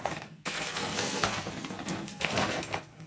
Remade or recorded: remade